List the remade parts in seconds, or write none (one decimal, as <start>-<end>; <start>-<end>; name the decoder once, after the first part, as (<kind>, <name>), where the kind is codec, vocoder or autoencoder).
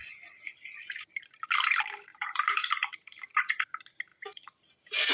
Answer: 2.1-3.4 (vocoder, BigVGAN v2); 4.1-5.1